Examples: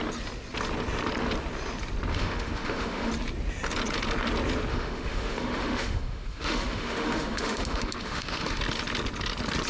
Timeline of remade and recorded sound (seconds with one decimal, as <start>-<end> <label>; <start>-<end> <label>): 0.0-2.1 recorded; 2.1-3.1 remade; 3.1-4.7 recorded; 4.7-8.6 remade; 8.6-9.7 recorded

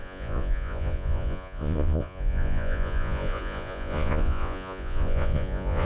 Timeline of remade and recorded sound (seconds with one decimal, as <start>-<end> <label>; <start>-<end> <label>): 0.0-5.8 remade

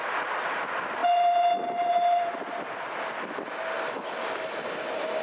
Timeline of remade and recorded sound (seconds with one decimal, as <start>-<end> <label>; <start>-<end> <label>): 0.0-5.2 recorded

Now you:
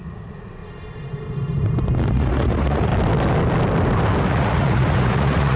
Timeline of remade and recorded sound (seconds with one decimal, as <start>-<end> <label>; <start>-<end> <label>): 0.0-0.6 remade; 0.6-2.1 recorded; 2.1-2.9 remade; 2.9-4.2 recorded; 4.2-5.6 remade

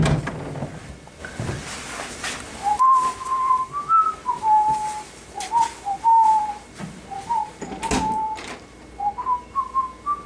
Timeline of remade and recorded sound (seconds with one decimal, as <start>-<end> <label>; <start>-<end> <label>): 0.0-10.3 recorded

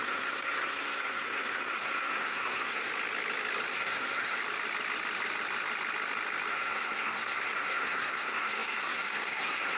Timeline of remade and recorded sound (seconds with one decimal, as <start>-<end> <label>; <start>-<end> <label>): 0.0-2.9 remade; 2.9-3.7 recorded; 3.7-4.4 remade; 4.4-6.5 recorded; 6.5-9.8 remade